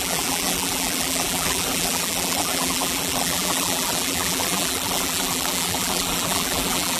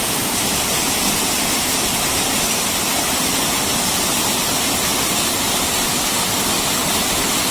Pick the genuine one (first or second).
second